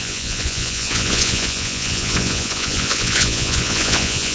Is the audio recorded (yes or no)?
no